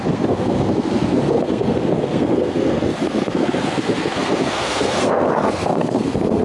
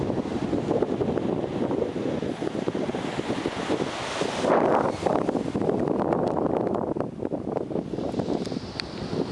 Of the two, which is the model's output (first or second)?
first